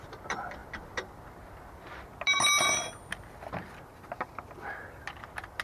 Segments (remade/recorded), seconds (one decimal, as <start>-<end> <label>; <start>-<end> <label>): 0.0-5.6 recorded